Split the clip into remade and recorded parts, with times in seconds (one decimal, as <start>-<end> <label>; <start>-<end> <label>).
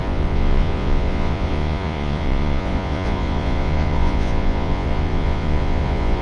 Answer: 0.0-6.2 remade